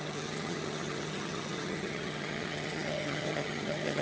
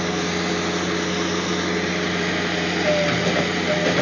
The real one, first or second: second